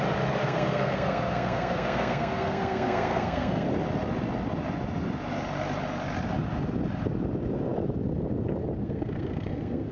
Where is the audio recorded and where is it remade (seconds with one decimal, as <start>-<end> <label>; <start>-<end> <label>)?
0.0-0.4 recorded; 0.4-3.7 remade; 3.7-8.8 recorded; 8.8-9.9 remade